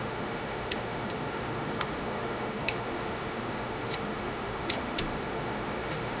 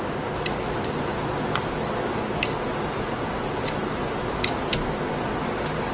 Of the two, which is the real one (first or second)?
second